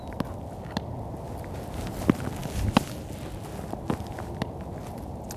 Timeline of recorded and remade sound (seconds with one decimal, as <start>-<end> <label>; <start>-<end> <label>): 0.0-5.4 recorded